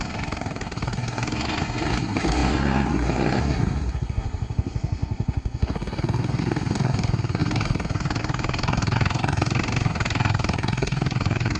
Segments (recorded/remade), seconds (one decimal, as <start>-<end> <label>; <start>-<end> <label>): 0.0-11.6 remade